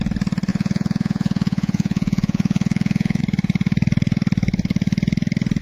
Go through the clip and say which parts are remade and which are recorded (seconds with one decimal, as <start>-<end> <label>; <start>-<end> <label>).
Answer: 0.0-0.5 recorded; 0.5-3.2 remade; 3.2-5.6 recorded